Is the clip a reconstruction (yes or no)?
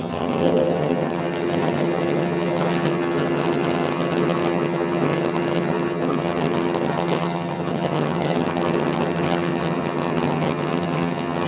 yes